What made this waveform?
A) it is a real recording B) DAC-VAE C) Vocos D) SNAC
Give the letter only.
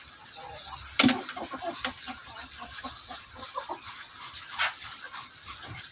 A